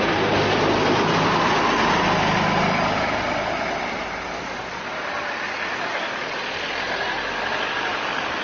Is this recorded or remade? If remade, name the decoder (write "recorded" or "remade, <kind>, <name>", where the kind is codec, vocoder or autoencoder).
recorded